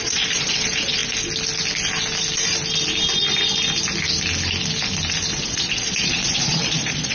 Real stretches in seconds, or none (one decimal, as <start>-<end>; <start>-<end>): 1.0-5.3